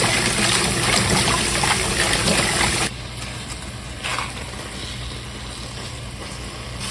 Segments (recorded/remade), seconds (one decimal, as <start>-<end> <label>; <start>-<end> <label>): 0.0-6.9 recorded